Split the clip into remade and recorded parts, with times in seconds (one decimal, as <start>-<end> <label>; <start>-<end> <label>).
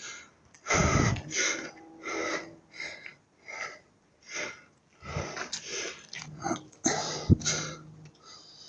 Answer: 0.0-8.7 recorded